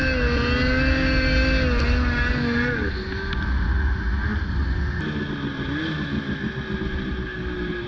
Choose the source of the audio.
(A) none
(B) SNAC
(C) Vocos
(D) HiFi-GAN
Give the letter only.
A